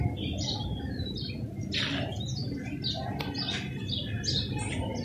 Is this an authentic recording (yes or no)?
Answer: yes